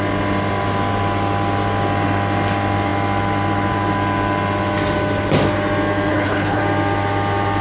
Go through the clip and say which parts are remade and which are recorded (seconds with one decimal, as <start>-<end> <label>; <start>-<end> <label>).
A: 0.0-6.1 recorded; 6.1-6.6 remade; 6.6-7.6 recorded